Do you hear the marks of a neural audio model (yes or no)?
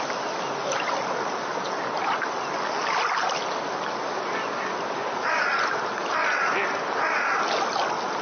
no